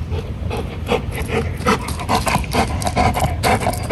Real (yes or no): yes